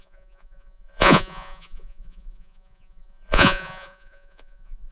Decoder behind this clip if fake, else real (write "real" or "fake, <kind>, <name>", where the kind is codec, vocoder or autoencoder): fake, vocoder, Vocos